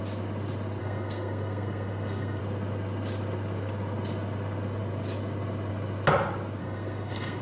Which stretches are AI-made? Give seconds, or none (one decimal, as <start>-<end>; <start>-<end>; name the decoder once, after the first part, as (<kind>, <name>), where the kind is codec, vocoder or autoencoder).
0.8-2.4 (codec, SNAC); 6.6-7.4